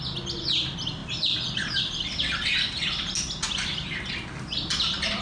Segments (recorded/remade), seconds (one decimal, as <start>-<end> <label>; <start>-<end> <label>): 0.0-5.2 recorded